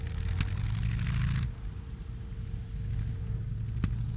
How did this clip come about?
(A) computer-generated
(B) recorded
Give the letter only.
B